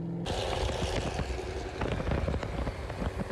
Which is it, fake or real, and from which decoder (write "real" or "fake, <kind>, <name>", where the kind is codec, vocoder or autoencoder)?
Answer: real